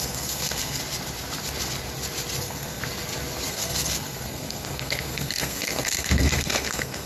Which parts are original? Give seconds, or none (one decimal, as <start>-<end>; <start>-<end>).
0.8-2.4; 2.8-3.5